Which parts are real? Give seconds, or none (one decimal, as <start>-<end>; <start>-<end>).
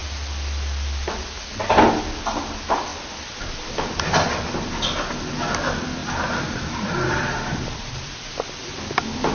0.0-6.0; 8.7-9.3